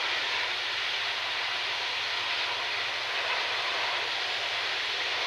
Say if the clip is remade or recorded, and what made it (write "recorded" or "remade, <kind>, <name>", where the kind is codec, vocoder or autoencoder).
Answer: recorded